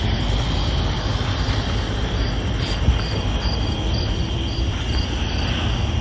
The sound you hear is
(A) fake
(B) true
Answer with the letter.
B